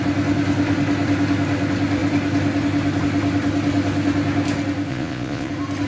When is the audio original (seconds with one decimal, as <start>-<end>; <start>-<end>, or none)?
0.0-4.9; 5.5-5.9